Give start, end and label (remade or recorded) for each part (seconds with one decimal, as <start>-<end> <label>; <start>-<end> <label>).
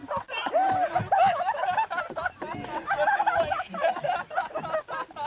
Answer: 0.0-5.3 recorded